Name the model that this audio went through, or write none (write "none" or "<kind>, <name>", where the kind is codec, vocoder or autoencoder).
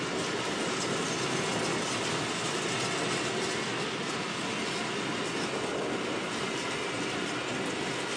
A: none